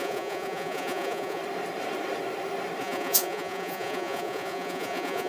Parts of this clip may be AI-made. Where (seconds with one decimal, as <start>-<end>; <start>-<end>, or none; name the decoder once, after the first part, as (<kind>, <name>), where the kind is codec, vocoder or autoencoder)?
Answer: 0.0-1.4 (vocoder, Vocos); 2.8-5.3